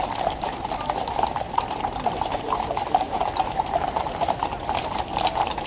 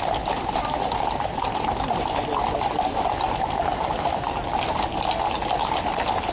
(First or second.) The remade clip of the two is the first